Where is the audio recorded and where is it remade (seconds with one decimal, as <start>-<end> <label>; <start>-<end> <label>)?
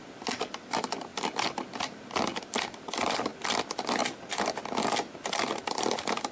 0.0-6.3 recorded